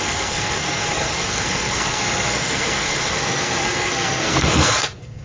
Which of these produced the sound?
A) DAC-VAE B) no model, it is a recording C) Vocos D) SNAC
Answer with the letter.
D